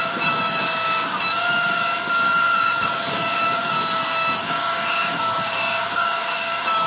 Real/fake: fake